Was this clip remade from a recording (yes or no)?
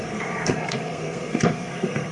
yes